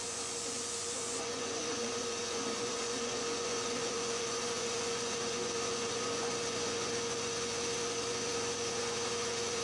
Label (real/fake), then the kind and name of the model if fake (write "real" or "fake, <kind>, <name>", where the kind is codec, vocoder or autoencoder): fake, vocoder, Vocos